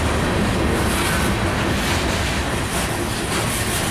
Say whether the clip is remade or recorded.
recorded